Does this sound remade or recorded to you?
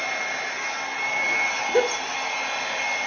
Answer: recorded